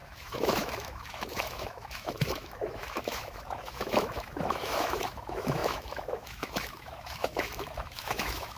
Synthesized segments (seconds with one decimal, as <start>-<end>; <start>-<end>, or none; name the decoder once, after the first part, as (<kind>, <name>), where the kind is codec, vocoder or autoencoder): 0.0-8.6 (autoencoder, DAC-VAE)